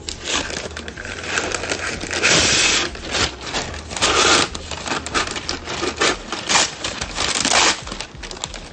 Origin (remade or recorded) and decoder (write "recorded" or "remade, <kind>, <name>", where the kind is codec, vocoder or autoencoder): recorded